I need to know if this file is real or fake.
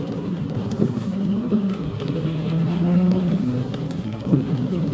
fake